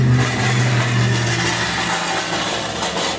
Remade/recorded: recorded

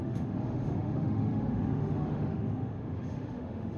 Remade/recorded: remade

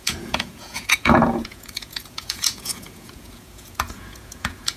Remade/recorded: remade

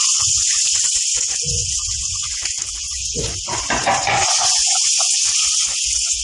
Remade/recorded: remade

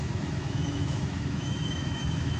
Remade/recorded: remade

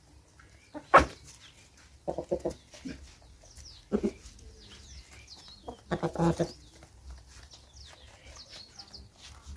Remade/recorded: recorded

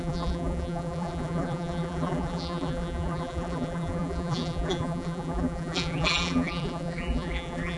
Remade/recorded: remade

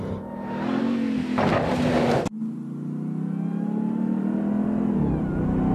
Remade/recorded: recorded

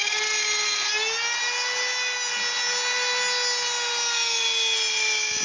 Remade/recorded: recorded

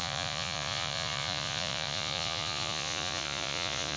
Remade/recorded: remade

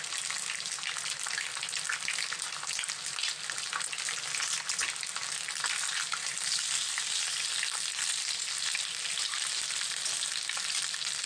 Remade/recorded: recorded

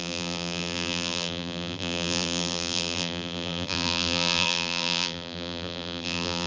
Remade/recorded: remade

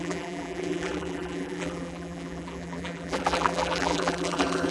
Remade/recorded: remade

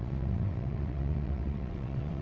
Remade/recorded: remade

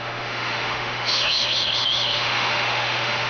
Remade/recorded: remade